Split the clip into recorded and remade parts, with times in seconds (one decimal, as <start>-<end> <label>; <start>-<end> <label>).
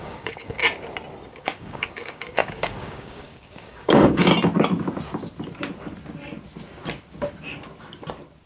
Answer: 0.0-0.6 remade; 0.6-1.3 recorded; 1.3-4.3 remade; 4.3-8.5 recorded